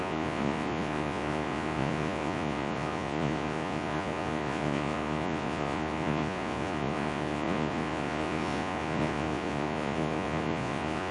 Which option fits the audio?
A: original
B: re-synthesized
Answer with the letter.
B